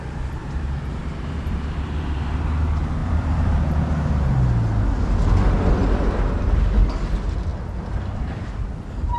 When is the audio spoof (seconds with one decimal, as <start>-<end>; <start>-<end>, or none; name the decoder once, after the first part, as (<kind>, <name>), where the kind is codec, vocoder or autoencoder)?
0.4-2.3 (vocoder, BigVGAN v2); 3.0-3.6